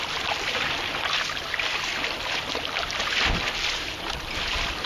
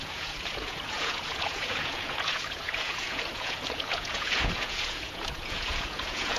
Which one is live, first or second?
first